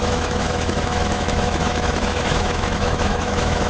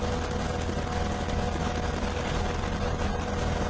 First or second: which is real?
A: second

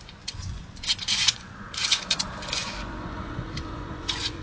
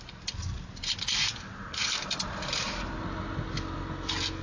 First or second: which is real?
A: second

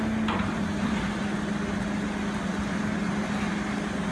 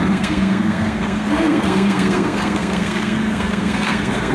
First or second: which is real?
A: first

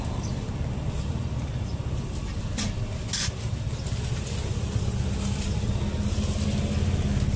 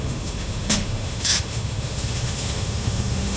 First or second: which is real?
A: first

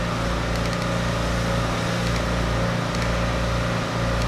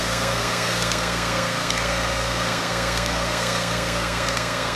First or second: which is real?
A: first